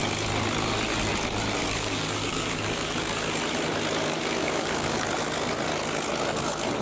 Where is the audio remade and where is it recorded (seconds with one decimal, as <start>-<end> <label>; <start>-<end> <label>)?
0.0-1.6 recorded; 1.6-3.4 remade; 3.4-4.0 recorded; 4.0-5.1 remade; 5.1-6.8 recorded